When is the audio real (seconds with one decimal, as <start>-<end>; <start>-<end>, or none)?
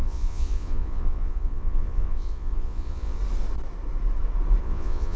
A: 3.2-4.6